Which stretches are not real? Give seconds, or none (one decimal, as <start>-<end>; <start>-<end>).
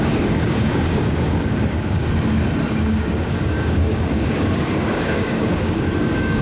0.0-2.0; 2.8-6.4